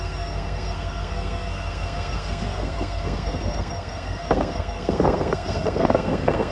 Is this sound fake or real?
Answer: fake